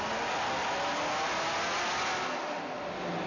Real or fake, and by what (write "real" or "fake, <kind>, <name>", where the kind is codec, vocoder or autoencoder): real